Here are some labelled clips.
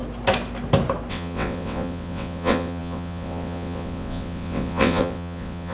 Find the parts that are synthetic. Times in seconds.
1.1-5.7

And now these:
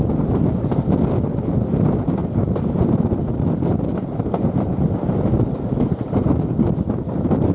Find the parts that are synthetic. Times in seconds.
none

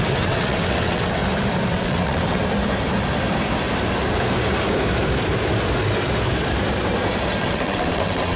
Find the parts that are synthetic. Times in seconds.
0.0-1.2; 1.7-2.4; 7.4-8.4

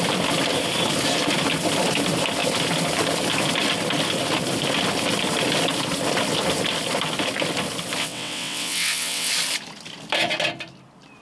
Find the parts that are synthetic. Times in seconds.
8.0-9.3

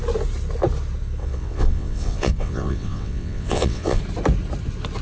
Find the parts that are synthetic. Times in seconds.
1.2-4.0

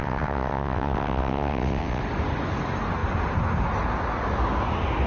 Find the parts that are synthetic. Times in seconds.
0.0-2.0